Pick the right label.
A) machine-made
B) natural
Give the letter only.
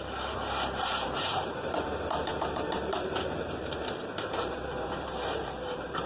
A